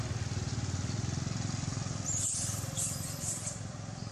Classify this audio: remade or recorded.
recorded